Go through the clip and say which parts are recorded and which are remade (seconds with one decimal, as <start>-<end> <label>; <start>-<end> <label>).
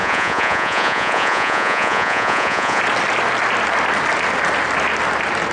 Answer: 0.0-2.8 remade; 2.8-5.5 recorded